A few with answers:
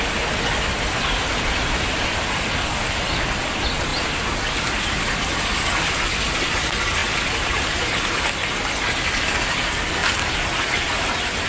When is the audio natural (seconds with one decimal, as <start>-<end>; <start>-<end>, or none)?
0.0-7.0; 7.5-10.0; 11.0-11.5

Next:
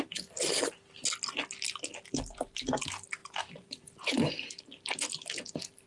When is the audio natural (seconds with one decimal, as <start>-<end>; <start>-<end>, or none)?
0.0-3.2; 4.3-5.9

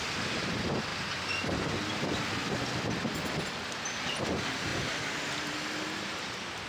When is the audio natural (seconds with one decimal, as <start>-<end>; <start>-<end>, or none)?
0.9-1.7; 2.4-3.7; 4.7-5.5

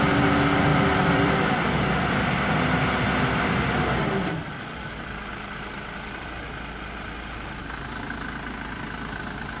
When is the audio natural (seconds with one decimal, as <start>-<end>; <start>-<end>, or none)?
0.0-0.7; 2.6-9.6

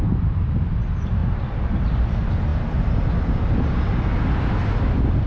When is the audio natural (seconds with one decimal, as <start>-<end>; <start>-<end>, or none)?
0.0-1.2; 2.0-5.3

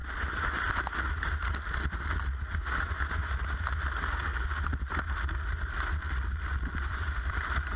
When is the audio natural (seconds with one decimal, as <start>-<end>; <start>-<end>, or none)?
0.0-6.9

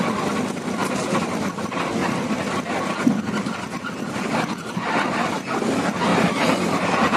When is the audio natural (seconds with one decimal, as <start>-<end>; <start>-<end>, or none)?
0.0-6.1

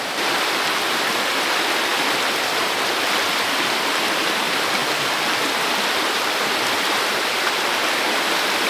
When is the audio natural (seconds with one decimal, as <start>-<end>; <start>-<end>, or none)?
0.0-1.9; 4.3-4.8; 7.4-8.7